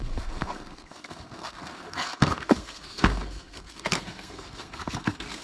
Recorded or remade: remade